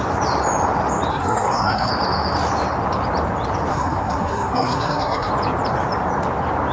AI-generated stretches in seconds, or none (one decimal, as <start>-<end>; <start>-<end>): 1.1-1.9; 3.7-5.3